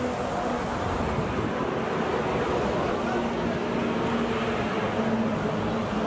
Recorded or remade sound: recorded